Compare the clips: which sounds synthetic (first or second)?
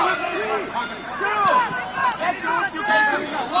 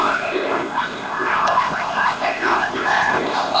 second